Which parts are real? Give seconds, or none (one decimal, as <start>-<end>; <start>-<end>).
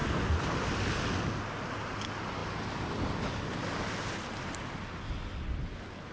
0.9-6.1